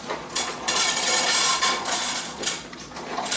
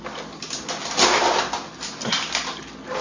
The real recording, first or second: second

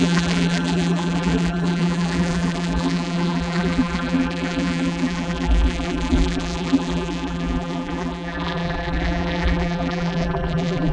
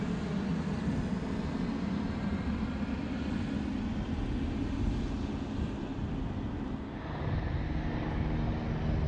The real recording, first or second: second